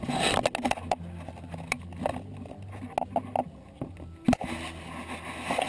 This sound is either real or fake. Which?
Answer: real